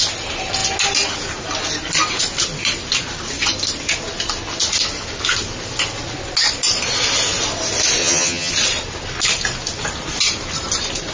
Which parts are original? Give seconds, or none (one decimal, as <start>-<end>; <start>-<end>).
0.0-8.0; 8.5-11.1